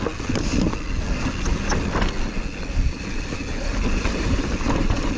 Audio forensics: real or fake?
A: real